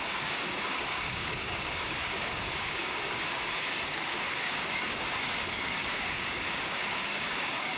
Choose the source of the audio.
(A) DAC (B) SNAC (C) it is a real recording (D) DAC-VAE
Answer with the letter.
A